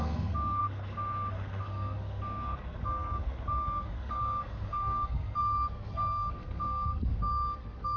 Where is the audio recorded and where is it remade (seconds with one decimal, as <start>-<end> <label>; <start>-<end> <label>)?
0.0-8.0 remade